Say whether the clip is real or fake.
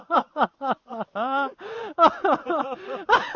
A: fake